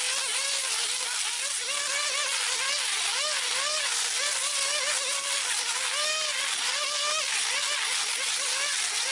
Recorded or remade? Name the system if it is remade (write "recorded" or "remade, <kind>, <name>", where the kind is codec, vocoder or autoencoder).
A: recorded